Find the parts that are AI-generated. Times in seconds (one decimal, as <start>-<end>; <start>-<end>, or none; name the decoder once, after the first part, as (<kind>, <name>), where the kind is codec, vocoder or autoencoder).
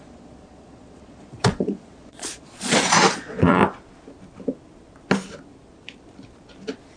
0.0-3.6 (vocoder, Vocos)